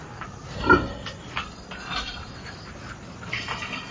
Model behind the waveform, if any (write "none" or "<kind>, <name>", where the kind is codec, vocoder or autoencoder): none